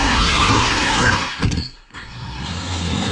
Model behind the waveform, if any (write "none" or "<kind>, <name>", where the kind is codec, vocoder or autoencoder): codec, SNAC